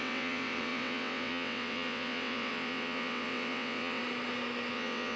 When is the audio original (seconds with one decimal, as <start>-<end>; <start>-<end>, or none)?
4.0-4.7